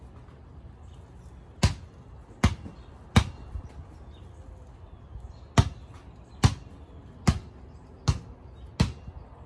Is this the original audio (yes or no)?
yes